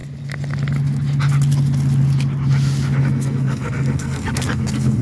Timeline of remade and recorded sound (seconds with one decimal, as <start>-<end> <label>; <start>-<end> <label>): 0.0-3.0 recorded; 3.0-5.0 remade